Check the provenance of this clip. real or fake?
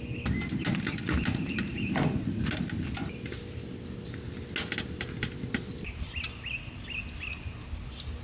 real